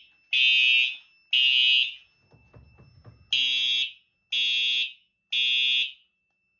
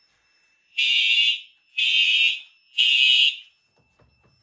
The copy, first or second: second